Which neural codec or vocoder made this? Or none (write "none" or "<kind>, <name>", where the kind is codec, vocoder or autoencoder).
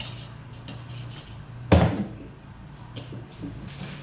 none